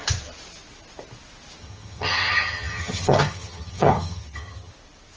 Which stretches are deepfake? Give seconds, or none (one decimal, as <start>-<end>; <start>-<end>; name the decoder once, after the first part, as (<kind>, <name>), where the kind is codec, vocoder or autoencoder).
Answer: 1.6-4.7 (vocoder, HiFi-GAN)